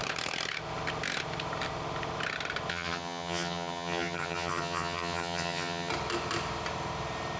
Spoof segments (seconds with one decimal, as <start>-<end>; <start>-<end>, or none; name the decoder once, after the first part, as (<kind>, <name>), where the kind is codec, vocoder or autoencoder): 2.7-5.9 (vocoder, HiFi-GAN)